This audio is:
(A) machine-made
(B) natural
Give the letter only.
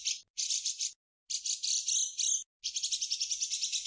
B